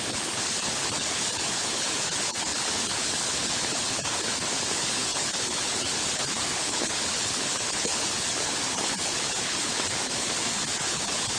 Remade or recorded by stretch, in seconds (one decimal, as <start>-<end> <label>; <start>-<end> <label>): 0.0-11.4 remade